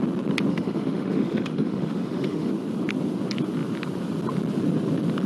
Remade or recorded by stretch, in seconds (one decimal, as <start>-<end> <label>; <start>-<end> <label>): 0.0-0.5 recorded; 0.5-2.5 remade; 2.5-5.3 recorded